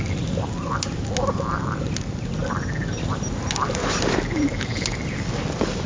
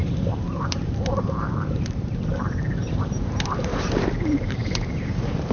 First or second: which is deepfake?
second